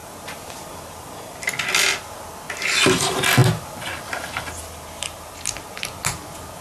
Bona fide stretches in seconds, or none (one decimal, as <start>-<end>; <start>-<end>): 0.0-6.6

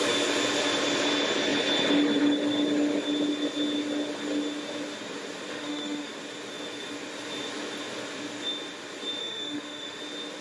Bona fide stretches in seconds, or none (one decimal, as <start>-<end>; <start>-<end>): 0.0-5.5; 6.1-9.2; 10.0-10.4